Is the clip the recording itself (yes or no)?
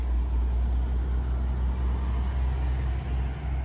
yes